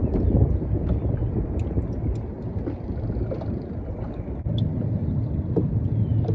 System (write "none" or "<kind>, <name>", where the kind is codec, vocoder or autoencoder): none